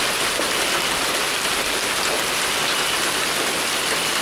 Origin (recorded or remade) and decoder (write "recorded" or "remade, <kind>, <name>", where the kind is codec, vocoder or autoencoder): recorded